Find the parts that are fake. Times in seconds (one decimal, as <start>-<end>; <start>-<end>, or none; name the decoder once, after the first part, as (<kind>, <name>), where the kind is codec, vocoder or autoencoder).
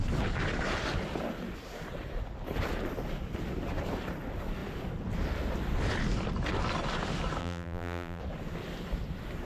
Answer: 7.4-8.2 (vocoder, BigVGAN v2)